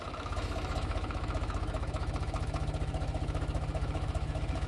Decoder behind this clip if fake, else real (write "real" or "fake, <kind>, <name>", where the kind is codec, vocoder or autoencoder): fake, autoencoder, DAC-VAE